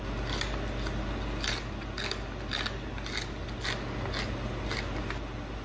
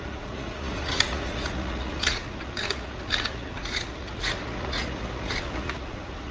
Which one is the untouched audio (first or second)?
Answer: first